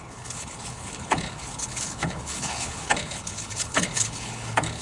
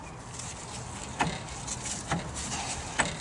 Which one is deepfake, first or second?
first